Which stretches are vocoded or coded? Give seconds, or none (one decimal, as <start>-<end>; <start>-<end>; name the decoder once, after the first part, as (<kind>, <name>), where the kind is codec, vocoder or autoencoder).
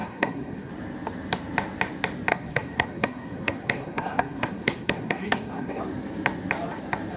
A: 0.0-0.7 (codec, SNAC); 2.3-5.8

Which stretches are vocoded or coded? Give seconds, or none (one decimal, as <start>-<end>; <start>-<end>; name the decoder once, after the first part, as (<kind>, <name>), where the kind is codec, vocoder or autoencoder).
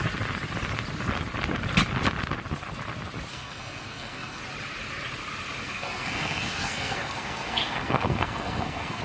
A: 3.3-4.4 (codec, SNAC); 5.6-9.0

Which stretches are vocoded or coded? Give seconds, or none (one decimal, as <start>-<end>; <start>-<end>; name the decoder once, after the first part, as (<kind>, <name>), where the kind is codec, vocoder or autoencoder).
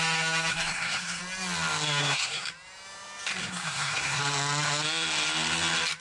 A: 0.5-1.2 (codec, SNAC); 2.0-2.5; 3.4-4.2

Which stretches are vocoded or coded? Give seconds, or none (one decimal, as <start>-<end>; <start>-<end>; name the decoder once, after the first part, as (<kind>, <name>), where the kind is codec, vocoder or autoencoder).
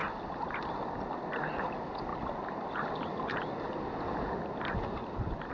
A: none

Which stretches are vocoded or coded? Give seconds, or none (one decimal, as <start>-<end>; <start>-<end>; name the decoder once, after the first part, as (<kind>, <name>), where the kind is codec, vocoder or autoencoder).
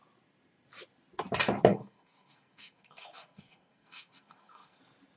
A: 1.7-4.8 (codec, SNAC)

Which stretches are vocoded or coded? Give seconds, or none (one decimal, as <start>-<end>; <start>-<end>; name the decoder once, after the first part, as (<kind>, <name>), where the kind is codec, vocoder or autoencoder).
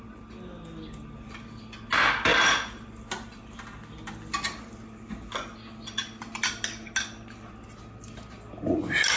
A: none